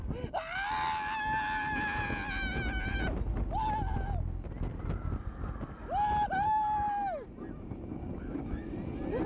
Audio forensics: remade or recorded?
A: recorded